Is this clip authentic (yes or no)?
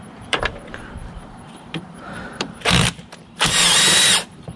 no